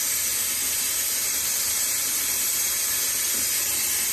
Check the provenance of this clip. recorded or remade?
recorded